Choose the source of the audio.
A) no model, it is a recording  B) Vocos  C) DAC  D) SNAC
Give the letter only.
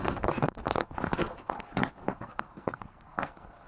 D